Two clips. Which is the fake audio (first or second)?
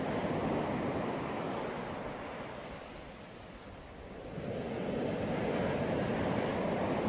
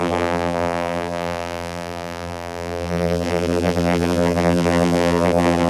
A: second